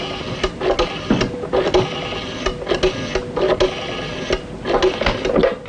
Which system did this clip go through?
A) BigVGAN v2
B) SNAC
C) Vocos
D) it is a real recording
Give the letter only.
D